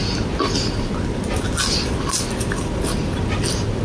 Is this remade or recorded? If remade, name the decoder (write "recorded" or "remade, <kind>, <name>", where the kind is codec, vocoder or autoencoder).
recorded